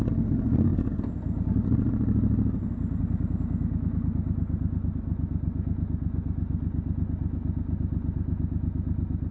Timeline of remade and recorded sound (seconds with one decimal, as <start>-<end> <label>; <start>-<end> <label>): 0.0-9.3 recorded